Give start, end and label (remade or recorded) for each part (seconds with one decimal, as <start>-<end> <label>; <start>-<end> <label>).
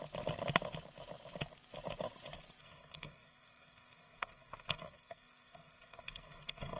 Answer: 0.0-2.6 recorded; 2.6-6.8 remade